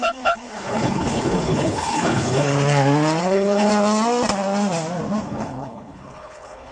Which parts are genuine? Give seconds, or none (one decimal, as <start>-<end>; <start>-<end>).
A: 2.5-3.2; 3.7-5.2